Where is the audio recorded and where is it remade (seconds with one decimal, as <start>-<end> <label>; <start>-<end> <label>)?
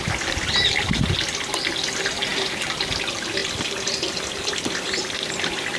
0.0-5.8 recorded